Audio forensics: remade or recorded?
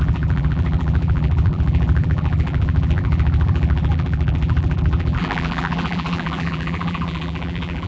remade